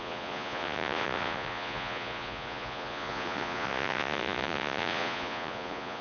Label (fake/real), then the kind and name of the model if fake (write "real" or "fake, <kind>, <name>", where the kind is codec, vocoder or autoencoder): fake, vocoder, Vocos